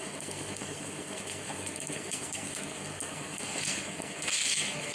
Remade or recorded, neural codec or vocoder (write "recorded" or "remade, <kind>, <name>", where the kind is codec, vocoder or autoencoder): remade, codec, SNAC